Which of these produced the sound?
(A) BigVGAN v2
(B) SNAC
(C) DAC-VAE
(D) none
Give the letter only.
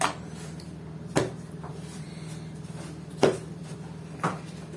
D